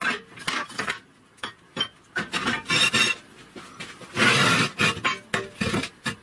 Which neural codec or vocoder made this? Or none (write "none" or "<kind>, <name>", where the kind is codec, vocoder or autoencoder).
none